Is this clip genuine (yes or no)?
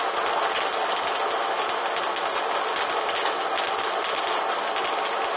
yes